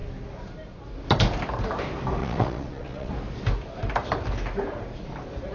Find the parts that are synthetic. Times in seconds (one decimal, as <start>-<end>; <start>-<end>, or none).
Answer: 2.2-3.1